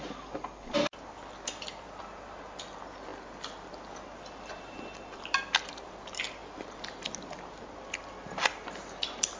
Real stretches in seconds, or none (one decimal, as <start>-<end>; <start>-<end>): 0.0-9.4